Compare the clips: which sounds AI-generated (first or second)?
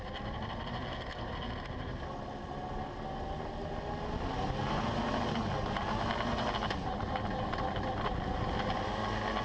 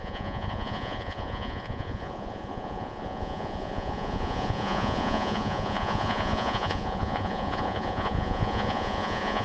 second